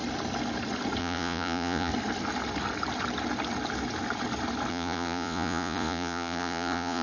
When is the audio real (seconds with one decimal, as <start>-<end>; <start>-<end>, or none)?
0.0-1.0; 1.9-4.7

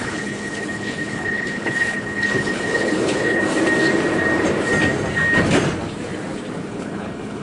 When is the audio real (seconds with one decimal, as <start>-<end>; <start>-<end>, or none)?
3.4-6.7

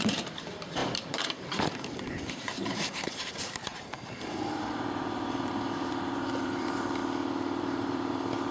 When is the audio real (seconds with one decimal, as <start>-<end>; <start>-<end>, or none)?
7.0-7.6

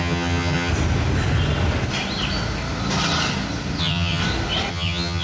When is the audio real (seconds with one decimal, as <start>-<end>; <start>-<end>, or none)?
0.7-3.8; 4.2-4.7

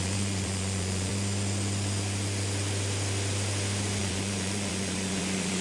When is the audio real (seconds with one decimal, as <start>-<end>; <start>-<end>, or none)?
1.1-4.0

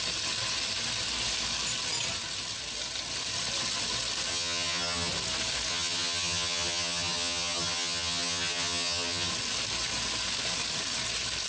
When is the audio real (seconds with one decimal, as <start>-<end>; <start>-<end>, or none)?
0.0-4.3; 5.1-5.7; 9.3-11.5